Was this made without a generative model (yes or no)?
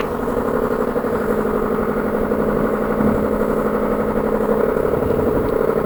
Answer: yes